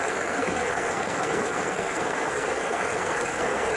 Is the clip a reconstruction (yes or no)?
yes